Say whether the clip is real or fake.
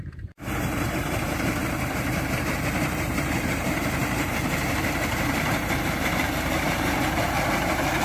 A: fake